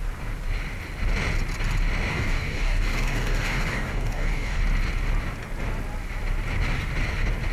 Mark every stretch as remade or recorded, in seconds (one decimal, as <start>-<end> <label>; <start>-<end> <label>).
0.0-2.1 recorded; 2.1-4.6 remade; 4.6-7.5 recorded